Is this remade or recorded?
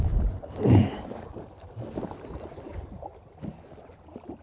recorded